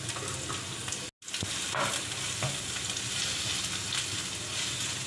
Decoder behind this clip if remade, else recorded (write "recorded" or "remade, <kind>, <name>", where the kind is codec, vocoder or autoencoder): recorded